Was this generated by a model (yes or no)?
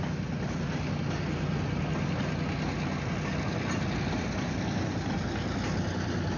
no